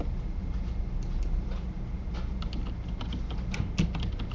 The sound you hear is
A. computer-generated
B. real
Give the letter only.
B